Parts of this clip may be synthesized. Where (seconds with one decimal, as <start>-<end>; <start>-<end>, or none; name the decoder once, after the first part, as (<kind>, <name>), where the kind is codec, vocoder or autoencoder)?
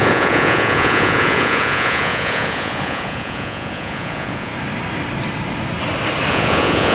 0.0-4.5 (vocoder, Vocos); 6.3-6.9